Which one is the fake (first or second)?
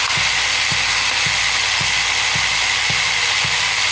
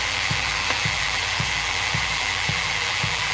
second